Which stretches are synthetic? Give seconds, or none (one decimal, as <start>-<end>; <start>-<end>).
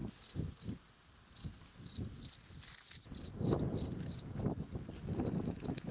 none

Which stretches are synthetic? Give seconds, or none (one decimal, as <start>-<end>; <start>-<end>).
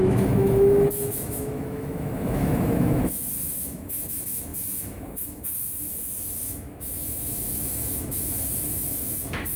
0.0-9.6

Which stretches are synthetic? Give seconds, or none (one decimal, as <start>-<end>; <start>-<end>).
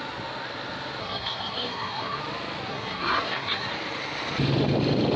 1.0-2.2; 2.7-3.7